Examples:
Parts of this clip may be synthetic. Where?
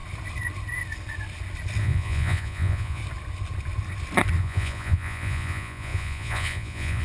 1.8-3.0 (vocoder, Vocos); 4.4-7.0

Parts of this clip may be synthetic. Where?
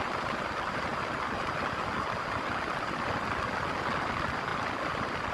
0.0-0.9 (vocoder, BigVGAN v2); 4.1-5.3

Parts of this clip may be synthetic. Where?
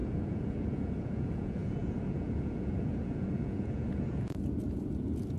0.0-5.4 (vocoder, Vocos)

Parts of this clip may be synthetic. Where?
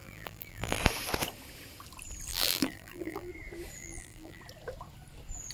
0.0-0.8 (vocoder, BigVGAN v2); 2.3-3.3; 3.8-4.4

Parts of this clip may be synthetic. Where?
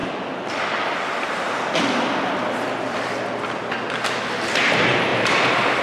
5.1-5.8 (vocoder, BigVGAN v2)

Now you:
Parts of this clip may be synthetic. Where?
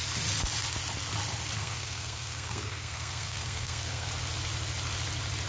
1.6-4.1 (codec, SNAC)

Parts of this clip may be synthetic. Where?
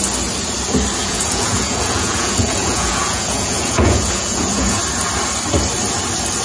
1.0-4.8 (vocoder, Vocos)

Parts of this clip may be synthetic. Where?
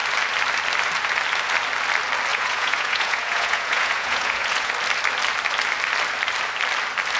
2.3-4.7 (vocoder, Vocos)